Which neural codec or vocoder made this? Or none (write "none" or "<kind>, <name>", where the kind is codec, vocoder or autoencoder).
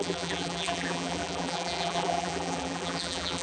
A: vocoder, BigVGAN v2